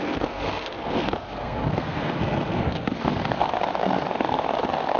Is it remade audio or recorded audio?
remade